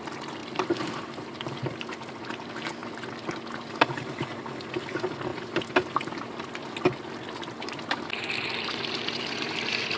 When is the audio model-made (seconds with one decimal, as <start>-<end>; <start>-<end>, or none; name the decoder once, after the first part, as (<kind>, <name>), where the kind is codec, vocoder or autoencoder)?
none